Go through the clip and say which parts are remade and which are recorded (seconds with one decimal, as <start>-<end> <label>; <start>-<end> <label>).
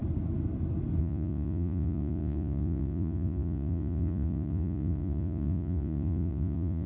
0.0-1.0 recorded; 1.0-6.9 remade